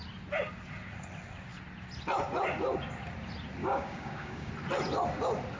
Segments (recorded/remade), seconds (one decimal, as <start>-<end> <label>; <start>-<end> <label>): 0.0-3.6 recorded; 3.6-4.5 remade; 4.5-5.6 recorded